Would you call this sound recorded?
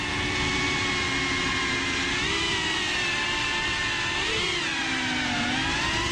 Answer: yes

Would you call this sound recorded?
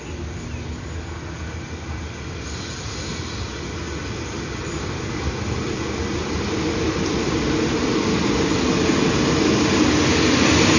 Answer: yes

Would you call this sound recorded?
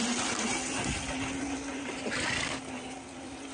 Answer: yes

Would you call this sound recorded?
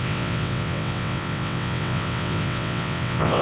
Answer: no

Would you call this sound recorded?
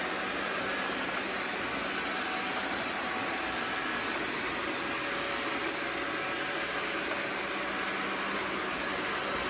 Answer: yes